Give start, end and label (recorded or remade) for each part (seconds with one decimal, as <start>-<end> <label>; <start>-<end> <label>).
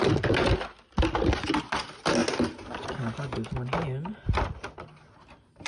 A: 0.0-5.7 recorded